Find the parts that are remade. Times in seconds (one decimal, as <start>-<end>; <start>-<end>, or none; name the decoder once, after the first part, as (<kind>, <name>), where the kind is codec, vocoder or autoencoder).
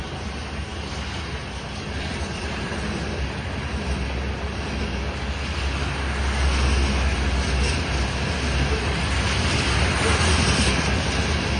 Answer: none